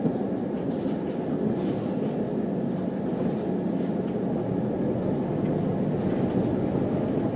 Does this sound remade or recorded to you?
recorded